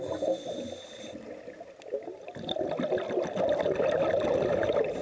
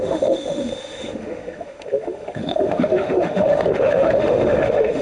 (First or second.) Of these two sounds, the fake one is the second